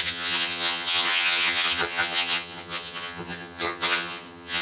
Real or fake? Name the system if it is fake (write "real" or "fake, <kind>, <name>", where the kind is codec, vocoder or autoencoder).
fake, vocoder, HiFi-GAN